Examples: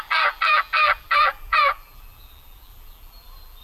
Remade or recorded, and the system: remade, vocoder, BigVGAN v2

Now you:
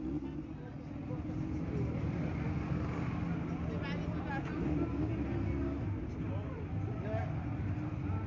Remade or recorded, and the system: recorded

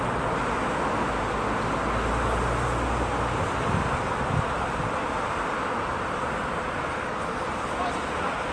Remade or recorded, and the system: recorded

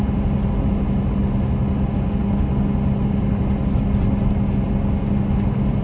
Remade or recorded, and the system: recorded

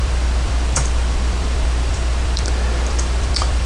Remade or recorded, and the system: remade, vocoder, BigVGAN v2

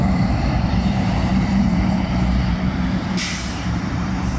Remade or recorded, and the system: remade, vocoder, BigVGAN v2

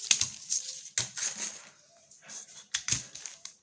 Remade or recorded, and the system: recorded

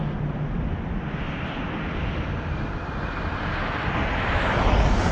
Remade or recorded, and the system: recorded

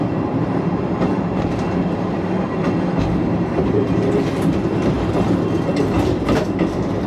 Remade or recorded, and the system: remade, vocoder, BigVGAN v2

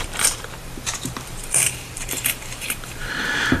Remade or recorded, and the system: remade, vocoder, BigVGAN v2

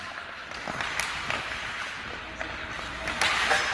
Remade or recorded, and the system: recorded